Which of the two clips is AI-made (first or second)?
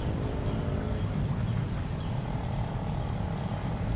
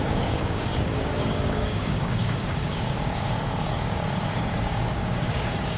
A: second